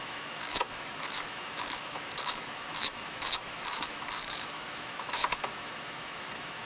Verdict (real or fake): fake